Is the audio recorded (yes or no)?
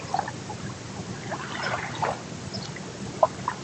yes